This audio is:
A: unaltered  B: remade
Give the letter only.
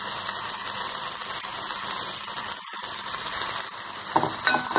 A